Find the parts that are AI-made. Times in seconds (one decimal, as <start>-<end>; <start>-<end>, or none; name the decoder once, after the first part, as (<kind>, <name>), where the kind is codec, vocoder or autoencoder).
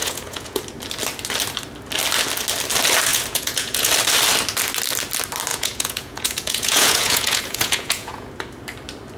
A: 0.0-0.6 (vocoder, Vocos); 3.1-3.9; 5.5-8.3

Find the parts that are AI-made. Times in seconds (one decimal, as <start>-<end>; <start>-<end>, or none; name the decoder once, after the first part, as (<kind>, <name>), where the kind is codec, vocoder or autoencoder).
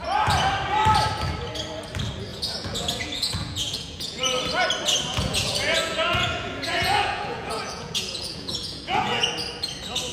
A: 2.3-4.2 (vocoder, Vocos); 5.1-9.3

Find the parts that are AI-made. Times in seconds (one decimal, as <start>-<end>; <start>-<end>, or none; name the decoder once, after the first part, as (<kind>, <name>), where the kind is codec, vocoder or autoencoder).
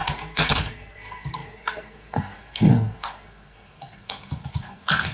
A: 0.0-5.1 (codec, SNAC)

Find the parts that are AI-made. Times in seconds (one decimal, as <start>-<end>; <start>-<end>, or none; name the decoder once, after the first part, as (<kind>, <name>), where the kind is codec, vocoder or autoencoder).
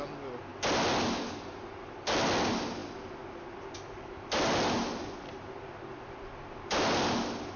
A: none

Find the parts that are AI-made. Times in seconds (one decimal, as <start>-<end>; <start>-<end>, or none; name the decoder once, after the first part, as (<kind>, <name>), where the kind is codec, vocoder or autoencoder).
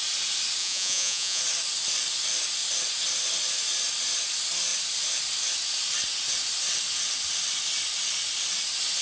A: 0.6-1.4 (vocoder, Vocos)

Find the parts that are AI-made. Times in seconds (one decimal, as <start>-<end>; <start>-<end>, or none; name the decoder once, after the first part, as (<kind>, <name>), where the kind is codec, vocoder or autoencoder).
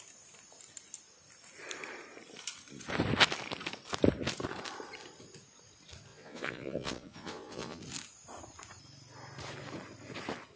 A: 6.1-7.8 (vocoder, Vocos)